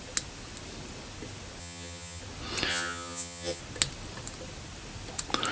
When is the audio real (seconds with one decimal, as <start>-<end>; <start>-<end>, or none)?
0.0-1.6; 2.2-2.7; 3.6-5.5